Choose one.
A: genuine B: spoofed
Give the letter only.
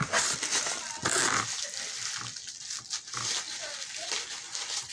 A